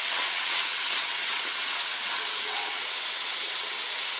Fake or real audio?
fake